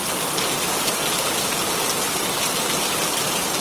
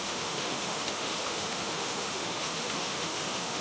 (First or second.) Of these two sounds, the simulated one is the second